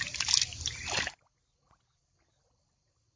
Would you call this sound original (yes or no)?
yes